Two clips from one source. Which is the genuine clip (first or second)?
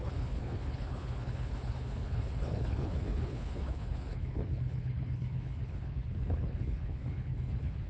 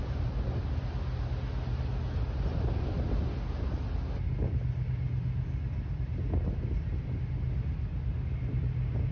second